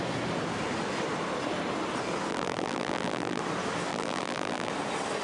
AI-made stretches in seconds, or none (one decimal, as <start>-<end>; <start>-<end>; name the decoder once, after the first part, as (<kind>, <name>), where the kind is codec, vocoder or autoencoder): 2.3-3.4 (vocoder, BigVGAN v2); 3.9-4.7